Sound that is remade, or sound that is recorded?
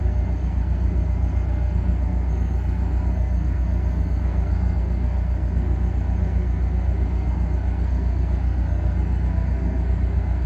remade